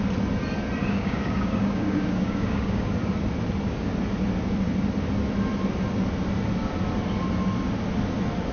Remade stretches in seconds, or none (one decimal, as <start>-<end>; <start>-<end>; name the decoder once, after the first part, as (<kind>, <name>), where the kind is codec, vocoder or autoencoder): 0.8-2.9 (codec, DAC)